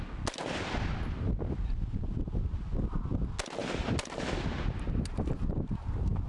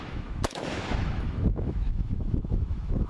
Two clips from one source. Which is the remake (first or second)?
second